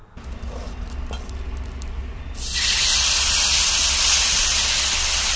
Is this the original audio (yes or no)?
yes